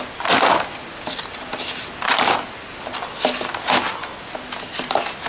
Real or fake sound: real